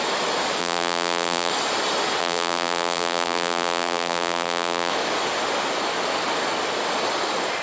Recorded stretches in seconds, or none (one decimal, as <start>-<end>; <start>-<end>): 0.0-0.6; 1.5-2.2; 4.9-7.6